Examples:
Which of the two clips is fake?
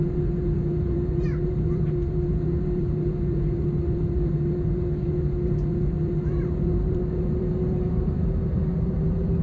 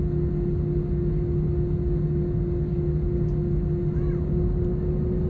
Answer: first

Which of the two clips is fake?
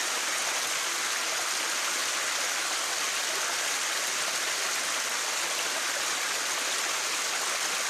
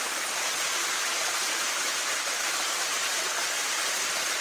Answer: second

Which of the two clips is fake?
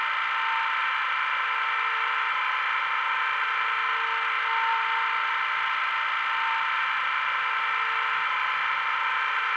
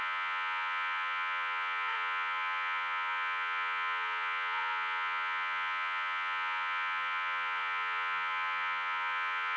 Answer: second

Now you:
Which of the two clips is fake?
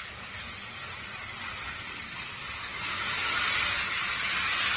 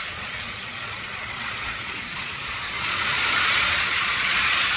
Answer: second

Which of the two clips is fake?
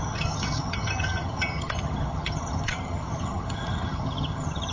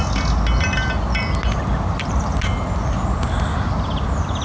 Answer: first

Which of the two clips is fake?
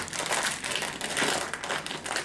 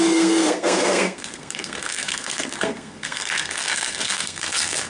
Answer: second